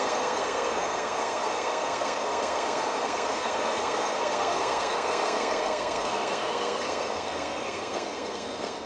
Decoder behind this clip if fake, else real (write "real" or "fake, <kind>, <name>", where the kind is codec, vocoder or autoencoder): fake, codec, SNAC